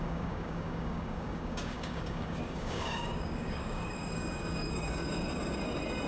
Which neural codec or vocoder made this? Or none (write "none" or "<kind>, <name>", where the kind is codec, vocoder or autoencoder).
codec, DAC